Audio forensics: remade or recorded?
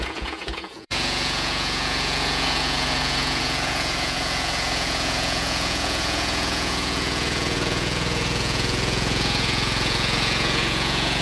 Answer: remade